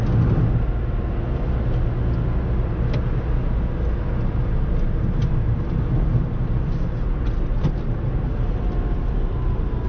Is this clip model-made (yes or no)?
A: no